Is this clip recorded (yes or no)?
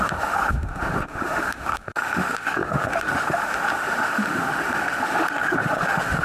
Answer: no